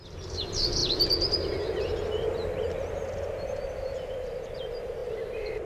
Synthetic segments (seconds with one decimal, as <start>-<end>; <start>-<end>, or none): none

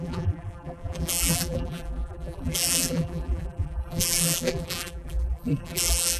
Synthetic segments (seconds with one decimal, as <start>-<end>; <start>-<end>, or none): 0.0-6.2